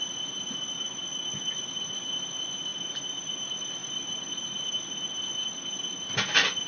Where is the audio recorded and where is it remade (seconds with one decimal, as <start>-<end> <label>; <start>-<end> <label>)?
0.0-6.7 recorded